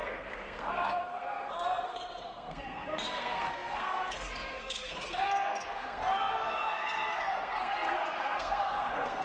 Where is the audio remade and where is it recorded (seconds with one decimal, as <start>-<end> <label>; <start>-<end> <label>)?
0.0-9.2 remade